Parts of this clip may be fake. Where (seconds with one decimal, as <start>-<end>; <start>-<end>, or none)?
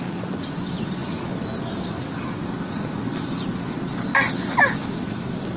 1.0-3.2